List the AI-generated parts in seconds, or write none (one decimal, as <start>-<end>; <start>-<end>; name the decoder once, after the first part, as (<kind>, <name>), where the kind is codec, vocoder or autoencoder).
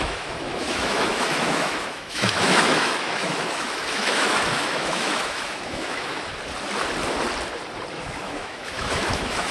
0.0-6.3 (autoencoder, DAC-VAE); 7.9-9.5